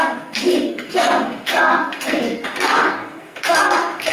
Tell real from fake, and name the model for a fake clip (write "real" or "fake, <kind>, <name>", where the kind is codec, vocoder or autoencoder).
fake, codec, SNAC